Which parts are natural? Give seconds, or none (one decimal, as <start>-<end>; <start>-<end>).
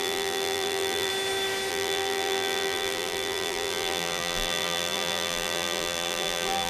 1.1-1.7